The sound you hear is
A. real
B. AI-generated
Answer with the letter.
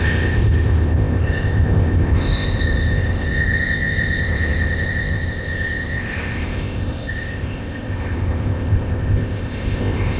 B